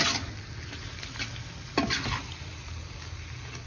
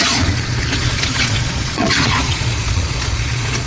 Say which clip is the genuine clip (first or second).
first